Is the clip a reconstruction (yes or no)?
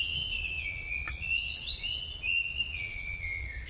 yes